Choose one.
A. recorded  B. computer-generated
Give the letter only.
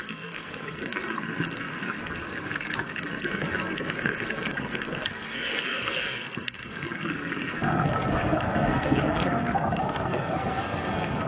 B